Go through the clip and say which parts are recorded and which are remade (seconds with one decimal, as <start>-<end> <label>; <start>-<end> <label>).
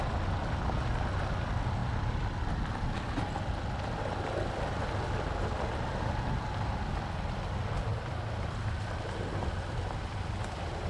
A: 0.0-10.9 recorded